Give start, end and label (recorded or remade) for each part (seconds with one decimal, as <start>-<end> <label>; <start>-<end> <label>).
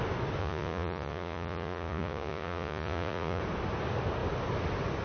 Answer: 0.0-0.4 recorded; 0.4-3.4 remade; 3.4-5.0 recorded